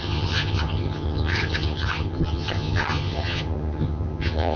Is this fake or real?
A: fake